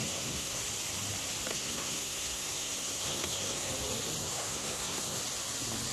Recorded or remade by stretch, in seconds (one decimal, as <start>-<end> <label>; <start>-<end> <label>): 0.0-0.6 remade; 0.6-1.5 recorded; 1.5-3.7 remade; 3.7-4.2 recorded; 4.2-5.2 remade; 5.2-5.9 recorded